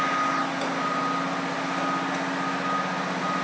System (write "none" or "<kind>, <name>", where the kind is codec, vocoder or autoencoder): none